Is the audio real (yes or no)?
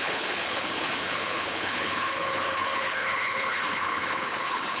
no